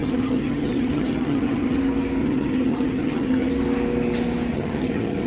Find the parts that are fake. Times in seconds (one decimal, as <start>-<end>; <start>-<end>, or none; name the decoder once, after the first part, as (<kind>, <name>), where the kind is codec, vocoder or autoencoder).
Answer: 0.0-1.8 (vocoder, HiFi-GAN); 2.2-3.5; 4.5-5.3